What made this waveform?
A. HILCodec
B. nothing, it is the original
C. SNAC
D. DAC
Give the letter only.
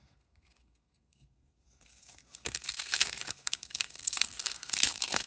C